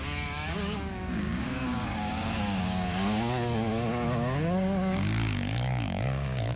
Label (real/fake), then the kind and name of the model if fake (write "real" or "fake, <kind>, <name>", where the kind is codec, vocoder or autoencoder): fake, codec, DAC